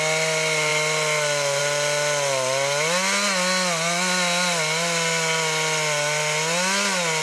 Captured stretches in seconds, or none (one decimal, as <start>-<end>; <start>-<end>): 0.0-7.2